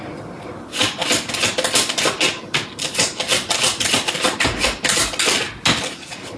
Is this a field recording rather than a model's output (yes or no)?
yes